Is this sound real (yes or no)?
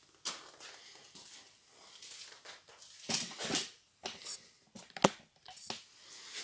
yes